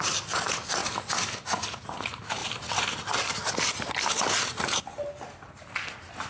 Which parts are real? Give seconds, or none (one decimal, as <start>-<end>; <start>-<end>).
0.0-6.3